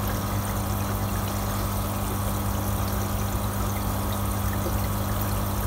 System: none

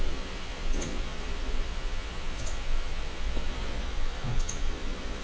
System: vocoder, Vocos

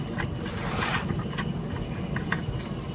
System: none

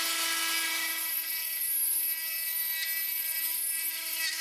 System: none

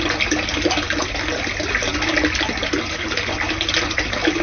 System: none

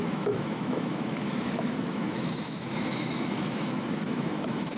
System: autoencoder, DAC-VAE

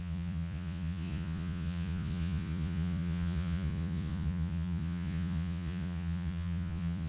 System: vocoder, Vocos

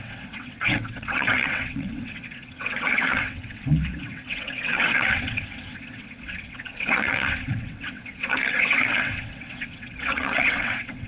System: vocoder, WaveNeXt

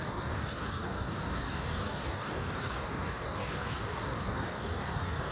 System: codec, DAC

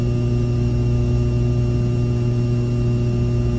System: none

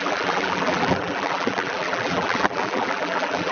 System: vocoder, BigVGAN v2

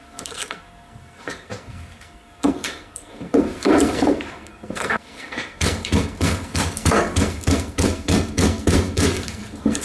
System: codec, SNAC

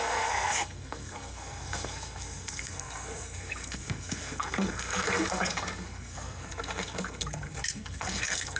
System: codec, SNAC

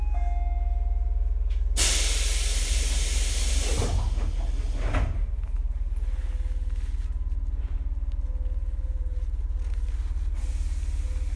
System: none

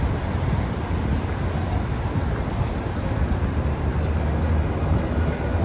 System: none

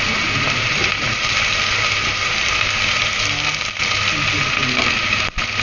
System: none